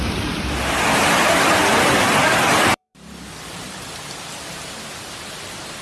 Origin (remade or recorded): remade